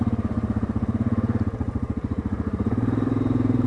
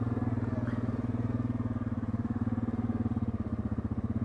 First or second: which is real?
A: second